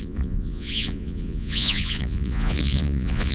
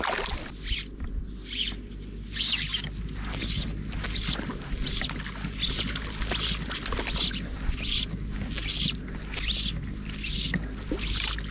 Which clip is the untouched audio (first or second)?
second